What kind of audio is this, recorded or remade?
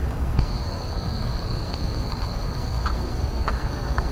remade